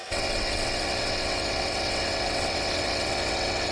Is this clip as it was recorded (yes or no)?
no